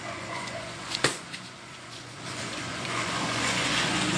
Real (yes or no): no